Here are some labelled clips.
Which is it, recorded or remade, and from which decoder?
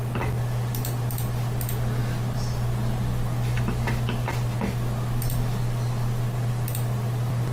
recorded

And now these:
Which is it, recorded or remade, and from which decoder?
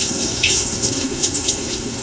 remade, codec, SNAC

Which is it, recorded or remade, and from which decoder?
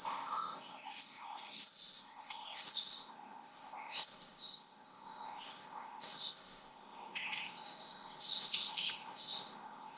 remade, codec, ZipCodec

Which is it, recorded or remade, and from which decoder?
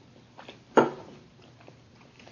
recorded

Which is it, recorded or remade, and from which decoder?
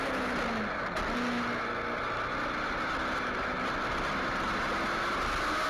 recorded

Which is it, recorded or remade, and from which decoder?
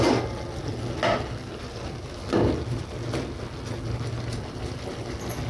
recorded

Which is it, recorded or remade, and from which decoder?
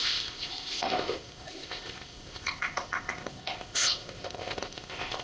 remade, codec, ZipCodec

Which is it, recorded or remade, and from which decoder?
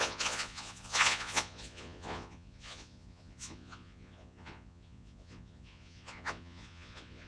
remade, vocoder, Vocos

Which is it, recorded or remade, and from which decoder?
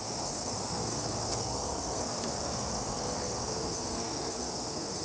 remade, codec, SNAC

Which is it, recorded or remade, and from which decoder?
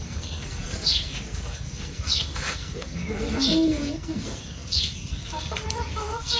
remade, codec, SNAC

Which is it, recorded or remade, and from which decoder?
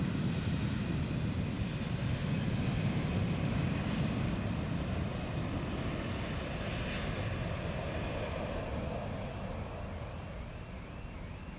recorded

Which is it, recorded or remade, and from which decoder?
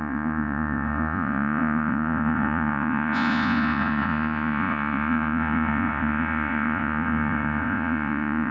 remade, vocoder, Vocos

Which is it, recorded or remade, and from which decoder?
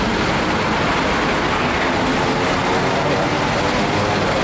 recorded